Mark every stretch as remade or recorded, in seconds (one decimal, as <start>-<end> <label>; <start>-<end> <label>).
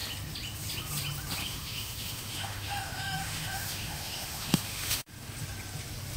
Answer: 0.0-1.4 recorded; 1.4-5.1 remade; 5.1-6.2 recorded